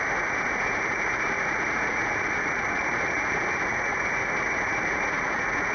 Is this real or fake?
fake